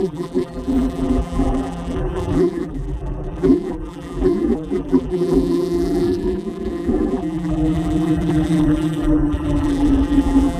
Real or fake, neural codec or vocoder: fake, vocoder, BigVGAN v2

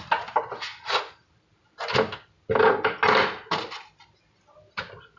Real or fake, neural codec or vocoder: real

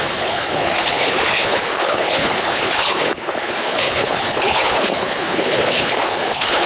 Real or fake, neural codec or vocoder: fake, codec, HILCodec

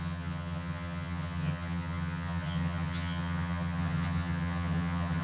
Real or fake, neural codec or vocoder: fake, vocoder, HiFi-GAN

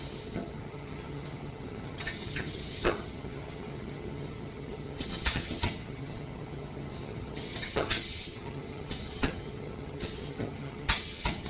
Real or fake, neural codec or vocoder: fake, vocoder, HiFi-GAN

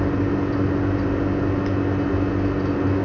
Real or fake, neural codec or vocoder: real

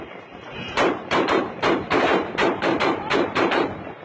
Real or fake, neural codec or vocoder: fake, vocoder, BigVGAN v2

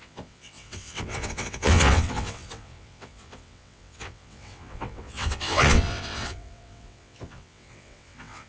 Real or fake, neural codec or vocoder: fake, vocoder, WaveNeXt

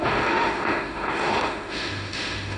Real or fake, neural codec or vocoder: fake, autoencoder, DAC-VAE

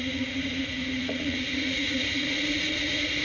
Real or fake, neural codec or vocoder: fake, vocoder, Vocos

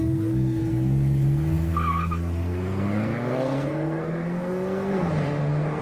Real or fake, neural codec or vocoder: fake, codec, SNAC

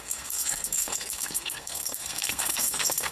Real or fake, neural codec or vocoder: fake, codec, SNAC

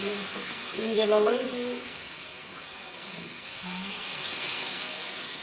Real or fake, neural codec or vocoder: fake, codec, SNAC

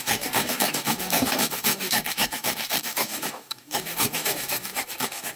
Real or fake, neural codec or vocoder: fake, codec, DAC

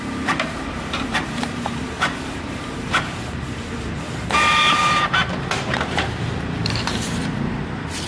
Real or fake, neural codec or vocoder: fake, vocoder, BigVGAN v2